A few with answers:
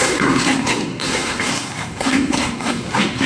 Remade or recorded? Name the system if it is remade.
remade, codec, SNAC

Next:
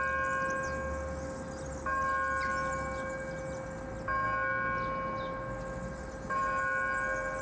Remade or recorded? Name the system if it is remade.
recorded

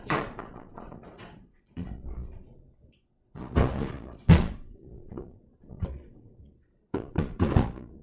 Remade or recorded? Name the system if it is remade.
remade, vocoder, Vocos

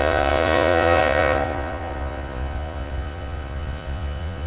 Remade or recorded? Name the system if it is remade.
remade, vocoder, Vocos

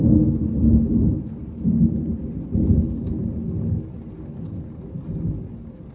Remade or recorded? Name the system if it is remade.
recorded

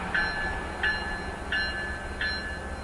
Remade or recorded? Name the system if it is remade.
recorded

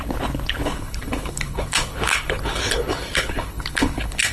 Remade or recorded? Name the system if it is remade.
remade, codec, HILCodec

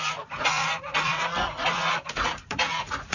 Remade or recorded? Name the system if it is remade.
remade, vocoder, Vocos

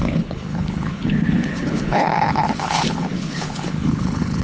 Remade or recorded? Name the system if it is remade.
remade, codec, HILCodec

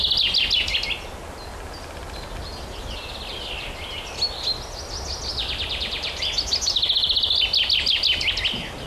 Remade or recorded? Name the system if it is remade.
recorded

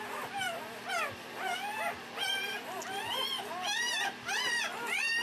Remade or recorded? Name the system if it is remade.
remade, vocoder, BigVGAN v2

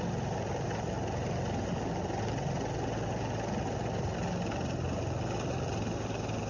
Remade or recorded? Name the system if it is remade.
recorded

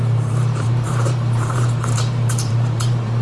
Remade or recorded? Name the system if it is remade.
remade, vocoder, BigVGAN v2